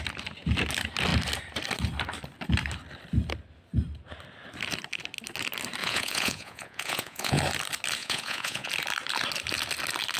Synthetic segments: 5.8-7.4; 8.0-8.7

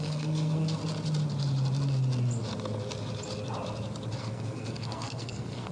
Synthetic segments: 0.0-0.8; 4.2-5.7

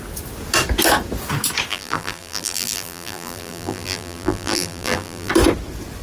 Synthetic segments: 1.7-5.3

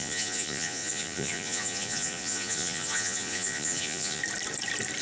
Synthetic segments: 0.0-4.2

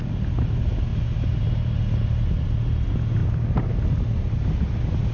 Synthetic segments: none

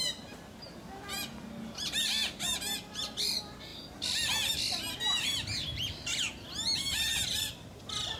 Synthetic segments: none

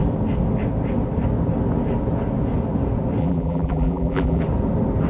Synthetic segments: 3.2-4.4